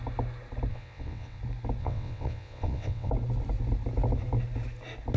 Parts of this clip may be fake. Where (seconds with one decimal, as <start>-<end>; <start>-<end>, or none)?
0.7-1.4; 1.8-3.1